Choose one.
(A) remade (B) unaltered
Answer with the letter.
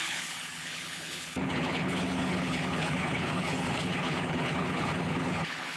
A